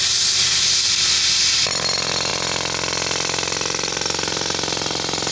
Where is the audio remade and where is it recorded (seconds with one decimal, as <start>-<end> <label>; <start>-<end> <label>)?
0.0-5.3 recorded